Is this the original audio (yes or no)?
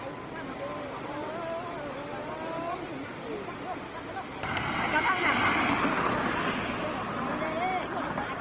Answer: yes